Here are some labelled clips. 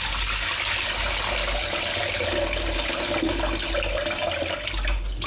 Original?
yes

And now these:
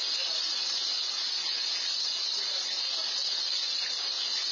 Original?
yes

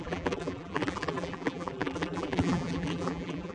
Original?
no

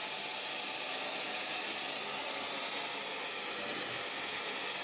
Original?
yes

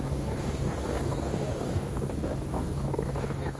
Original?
no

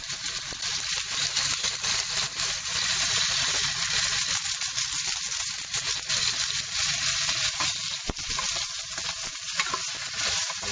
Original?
yes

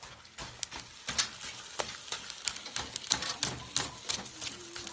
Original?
yes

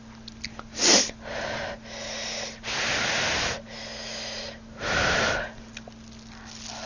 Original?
yes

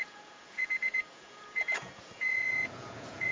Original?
no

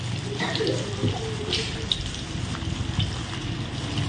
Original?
yes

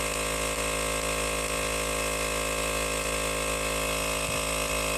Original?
yes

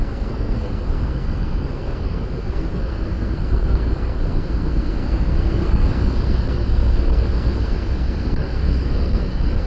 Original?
no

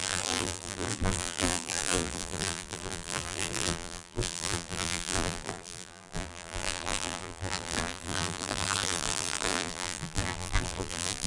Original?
no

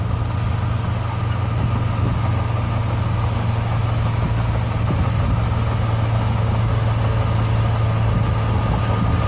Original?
yes